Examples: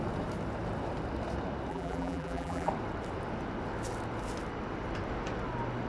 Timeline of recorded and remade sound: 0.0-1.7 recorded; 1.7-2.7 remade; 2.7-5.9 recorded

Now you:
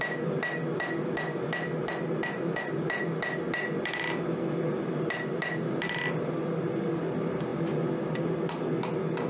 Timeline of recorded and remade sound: 0.0-9.3 recorded

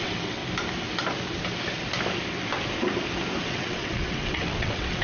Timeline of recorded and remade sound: 0.0-0.4 remade; 0.4-3.4 recorded; 3.4-5.0 remade

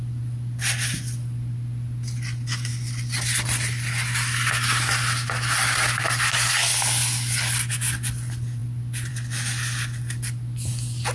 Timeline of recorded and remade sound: 0.0-11.1 recorded

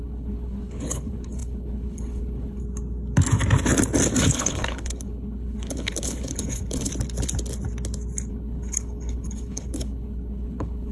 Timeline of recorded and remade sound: 0.0-2.6 remade; 2.6-4.2 recorded; 4.2-6.9 remade; 6.9-8.3 recorded; 8.3-10.9 remade